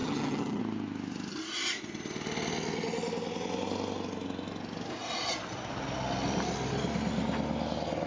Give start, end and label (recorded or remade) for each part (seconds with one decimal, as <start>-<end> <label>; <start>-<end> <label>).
0.0-0.6 remade; 0.6-8.1 recorded